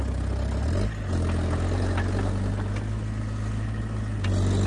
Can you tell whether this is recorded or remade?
recorded